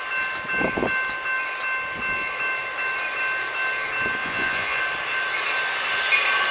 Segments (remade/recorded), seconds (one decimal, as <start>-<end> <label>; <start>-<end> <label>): 0.0-4.2 recorded; 4.2-4.8 remade; 4.8-6.5 recorded